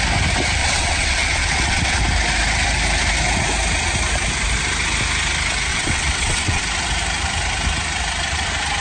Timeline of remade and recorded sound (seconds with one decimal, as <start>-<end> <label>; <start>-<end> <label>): 0.0-0.6 recorded; 0.6-2.0 remade; 2.0-5.7 recorded; 5.7-6.6 remade; 6.6-8.8 recorded